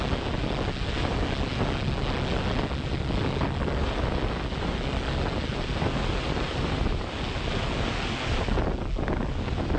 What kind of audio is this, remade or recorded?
recorded